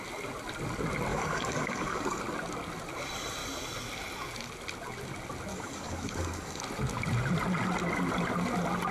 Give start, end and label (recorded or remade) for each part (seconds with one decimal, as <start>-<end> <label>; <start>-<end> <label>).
0.0-1.1 recorded; 1.1-2.2 remade; 2.2-5.5 recorded; 5.5-6.6 remade; 6.6-8.9 recorded